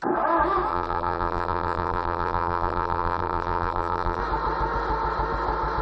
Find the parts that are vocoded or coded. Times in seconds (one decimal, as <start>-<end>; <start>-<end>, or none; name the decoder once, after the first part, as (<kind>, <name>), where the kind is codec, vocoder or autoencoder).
0.7-4.2 (vocoder, BigVGAN v2)